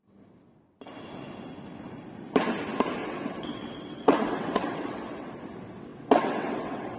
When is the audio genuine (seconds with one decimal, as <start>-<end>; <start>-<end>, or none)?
0.0-3.0; 5.3-5.9